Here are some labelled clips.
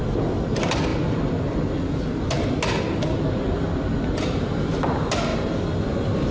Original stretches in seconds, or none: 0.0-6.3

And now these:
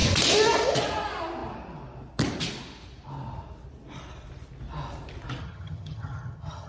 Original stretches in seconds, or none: 0.0-5.4

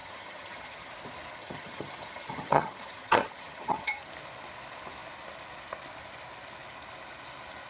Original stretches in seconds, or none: 0.9-1.4; 4.0-7.7

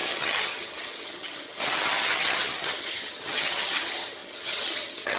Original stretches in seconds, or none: none

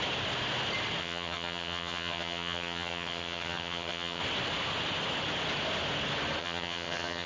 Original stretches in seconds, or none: 0.0-1.0; 4.2-6.4